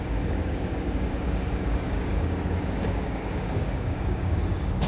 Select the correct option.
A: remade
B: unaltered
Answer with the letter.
A